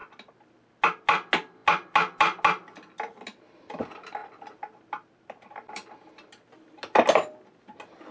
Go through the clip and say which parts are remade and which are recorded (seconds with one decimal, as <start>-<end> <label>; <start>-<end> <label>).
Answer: 0.0-8.1 recorded